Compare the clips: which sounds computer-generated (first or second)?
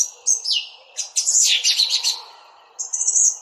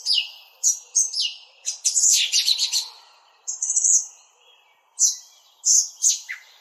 second